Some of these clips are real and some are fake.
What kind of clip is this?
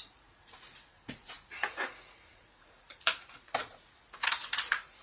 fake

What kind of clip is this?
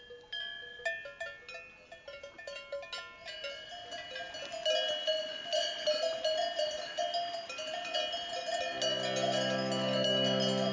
real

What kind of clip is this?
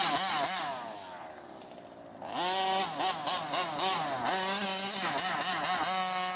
real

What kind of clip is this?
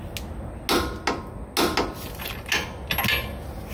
real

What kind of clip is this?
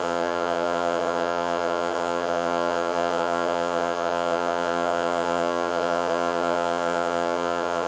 fake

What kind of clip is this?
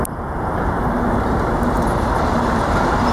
real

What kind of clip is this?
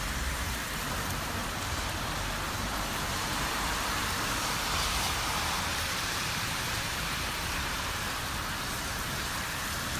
fake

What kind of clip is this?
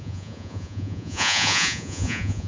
fake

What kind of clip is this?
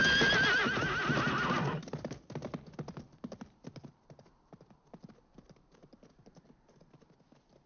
real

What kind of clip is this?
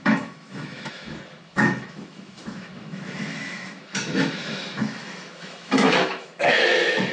fake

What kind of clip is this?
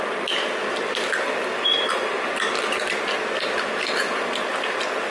real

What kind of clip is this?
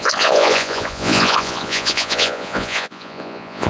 fake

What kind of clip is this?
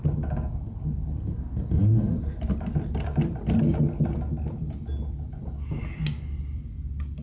real